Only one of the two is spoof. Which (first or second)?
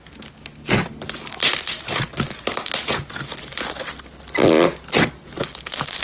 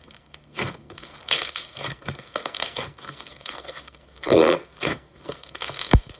second